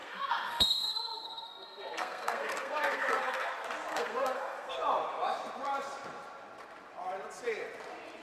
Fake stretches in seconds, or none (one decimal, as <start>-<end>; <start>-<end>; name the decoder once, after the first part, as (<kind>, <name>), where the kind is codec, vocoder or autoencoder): 0.0-3.5 (codec, SNAC); 3.9-4.7